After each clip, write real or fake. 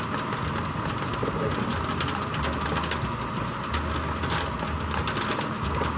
real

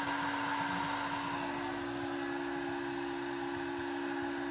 real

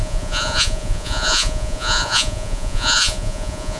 fake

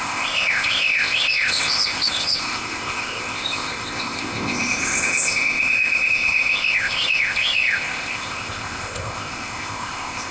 fake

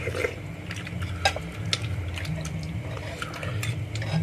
real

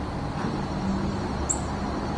real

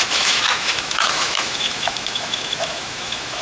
fake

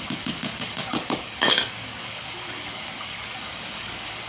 fake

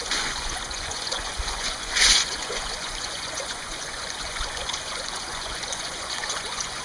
fake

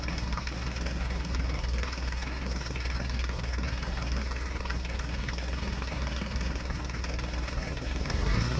fake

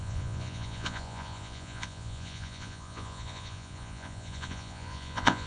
fake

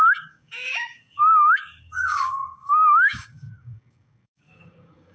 fake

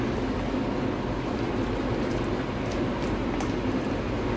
real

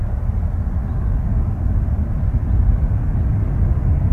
real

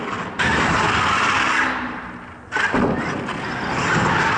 real